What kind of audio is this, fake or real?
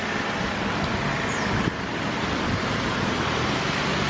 real